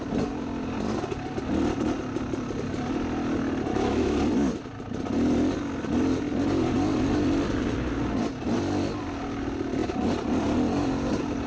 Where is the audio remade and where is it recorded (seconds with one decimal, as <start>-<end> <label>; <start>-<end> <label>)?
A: 0.0-3.7 recorded; 3.7-4.2 remade; 4.2-11.5 recorded